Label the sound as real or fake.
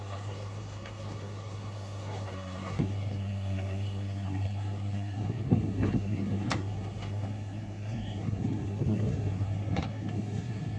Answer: fake